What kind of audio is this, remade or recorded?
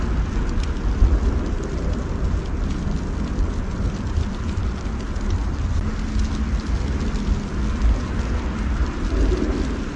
recorded